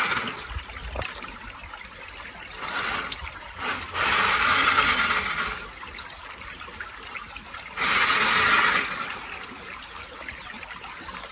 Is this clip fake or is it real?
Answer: real